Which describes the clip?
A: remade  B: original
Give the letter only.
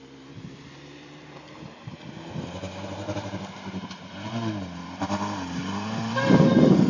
A